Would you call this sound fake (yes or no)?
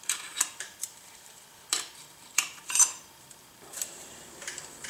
yes